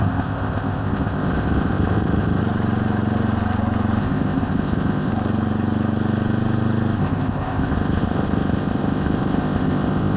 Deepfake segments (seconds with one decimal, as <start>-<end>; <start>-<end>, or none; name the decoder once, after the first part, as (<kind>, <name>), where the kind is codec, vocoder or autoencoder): 0.0-2.4 (codec, ZipCodec); 4.0-5.1; 7.0-10.2